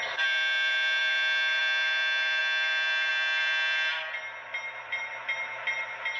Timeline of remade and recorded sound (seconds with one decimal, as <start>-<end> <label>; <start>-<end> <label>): 0.0-6.2 recorded